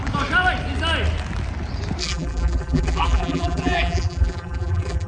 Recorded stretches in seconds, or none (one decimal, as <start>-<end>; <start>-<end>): 0.0-2.0